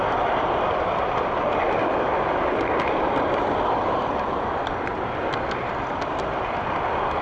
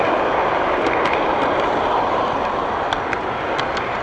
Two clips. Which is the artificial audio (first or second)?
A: first